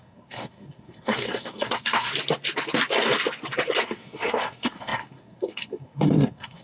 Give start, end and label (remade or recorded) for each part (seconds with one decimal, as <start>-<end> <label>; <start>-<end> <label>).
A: 0.0-2.1 remade; 2.1-3.8 recorded; 3.8-6.6 remade